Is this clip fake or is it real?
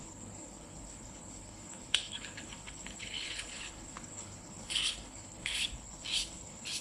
fake